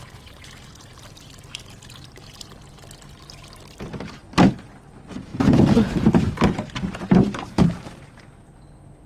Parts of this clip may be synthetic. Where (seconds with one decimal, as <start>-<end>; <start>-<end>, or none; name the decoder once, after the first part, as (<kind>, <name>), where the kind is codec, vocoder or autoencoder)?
5.3-6.1 (vocoder, Vocos)